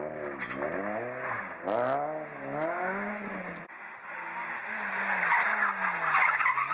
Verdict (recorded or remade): recorded